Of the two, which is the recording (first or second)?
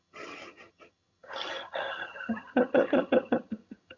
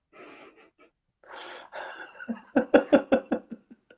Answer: second